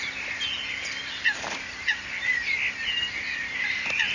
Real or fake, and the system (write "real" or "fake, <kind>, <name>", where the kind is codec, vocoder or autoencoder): real